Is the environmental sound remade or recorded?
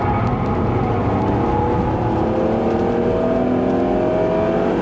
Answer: recorded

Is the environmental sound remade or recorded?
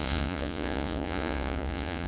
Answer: remade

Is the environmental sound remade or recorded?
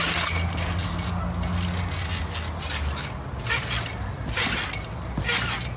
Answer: recorded